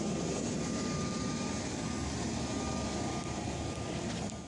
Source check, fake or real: real